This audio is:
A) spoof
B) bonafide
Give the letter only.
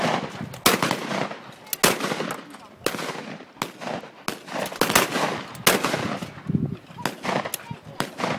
B